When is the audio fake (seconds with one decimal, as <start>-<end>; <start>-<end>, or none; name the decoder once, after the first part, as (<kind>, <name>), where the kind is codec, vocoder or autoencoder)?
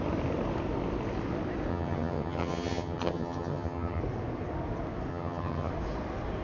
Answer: 1.7-4.0 (vocoder, HiFi-GAN); 5.1-5.7